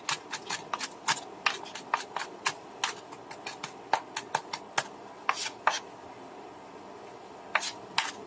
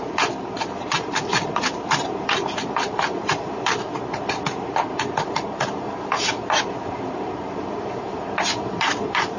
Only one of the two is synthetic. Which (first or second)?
second